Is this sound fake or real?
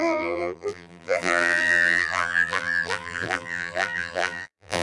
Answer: fake